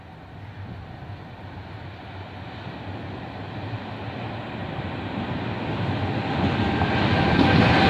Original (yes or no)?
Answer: yes